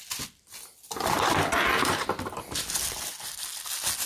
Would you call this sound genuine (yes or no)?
yes